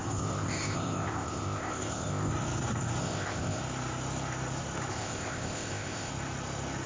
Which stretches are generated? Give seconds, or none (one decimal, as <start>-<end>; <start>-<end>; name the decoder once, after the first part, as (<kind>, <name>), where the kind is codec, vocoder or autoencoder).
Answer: 0.0-2.3 (codec, ZipCodec); 3.0-3.6; 4.9-6.1